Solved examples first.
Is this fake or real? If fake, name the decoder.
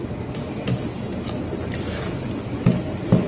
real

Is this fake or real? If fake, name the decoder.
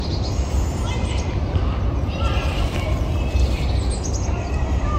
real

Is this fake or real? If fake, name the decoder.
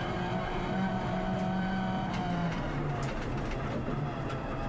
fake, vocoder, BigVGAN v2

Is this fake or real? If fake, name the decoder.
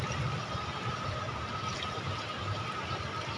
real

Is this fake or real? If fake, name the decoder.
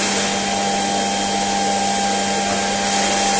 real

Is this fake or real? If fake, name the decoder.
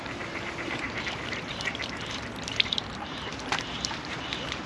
fake, vocoder, BigVGAN v2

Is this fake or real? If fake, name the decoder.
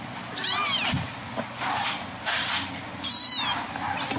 fake, vocoder, BigVGAN v2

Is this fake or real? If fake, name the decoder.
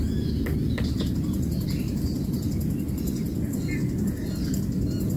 real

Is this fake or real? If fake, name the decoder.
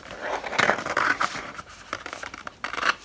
fake, vocoder, BigVGAN v2